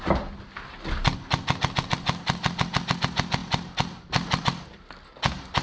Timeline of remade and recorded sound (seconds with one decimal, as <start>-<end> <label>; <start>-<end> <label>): 0.0-5.6 recorded